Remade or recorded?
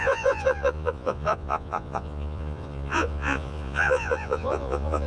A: remade